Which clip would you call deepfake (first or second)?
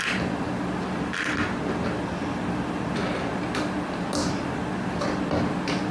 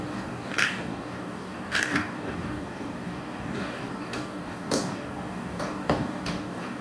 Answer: second